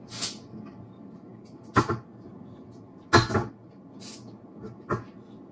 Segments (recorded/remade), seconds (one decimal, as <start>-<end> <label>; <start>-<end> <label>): 0.0-5.5 recorded